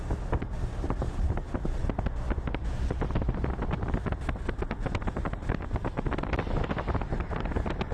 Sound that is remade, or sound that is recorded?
recorded